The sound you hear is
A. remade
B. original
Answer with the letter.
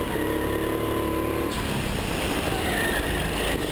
B